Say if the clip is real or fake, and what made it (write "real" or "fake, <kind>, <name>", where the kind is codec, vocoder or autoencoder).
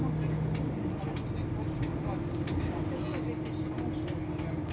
real